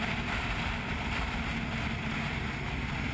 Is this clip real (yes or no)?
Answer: yes